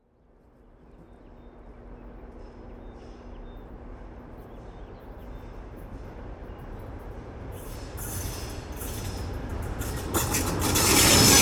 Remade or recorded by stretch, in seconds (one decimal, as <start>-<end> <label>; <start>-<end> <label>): 0.0-6.4 recorded; 6.4-8.1 remade; 8.1-11.4 recorded